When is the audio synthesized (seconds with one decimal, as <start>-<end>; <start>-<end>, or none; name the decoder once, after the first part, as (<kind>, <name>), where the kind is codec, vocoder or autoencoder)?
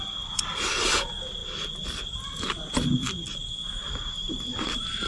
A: 3.6-5.1 (vocoder, BigVGAN v2)